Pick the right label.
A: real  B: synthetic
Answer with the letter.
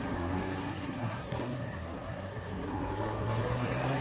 B